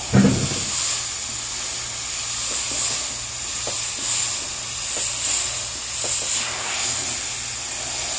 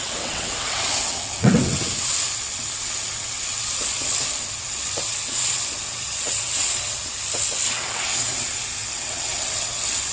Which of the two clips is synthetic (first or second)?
second